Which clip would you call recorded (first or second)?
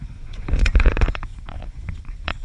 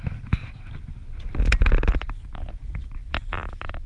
second